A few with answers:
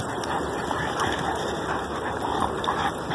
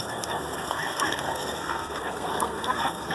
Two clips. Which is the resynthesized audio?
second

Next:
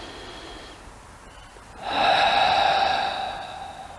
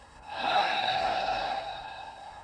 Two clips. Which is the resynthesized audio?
second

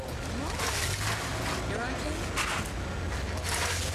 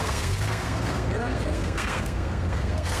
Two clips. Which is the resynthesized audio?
second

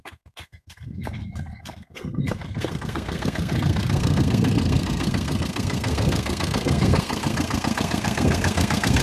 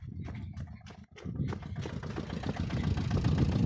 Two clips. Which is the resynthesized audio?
first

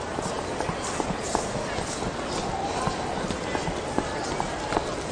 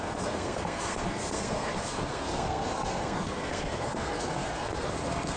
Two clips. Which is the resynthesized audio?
second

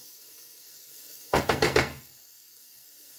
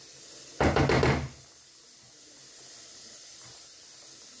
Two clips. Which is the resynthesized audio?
first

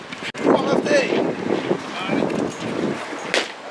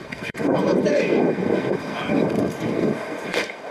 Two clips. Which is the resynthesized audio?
second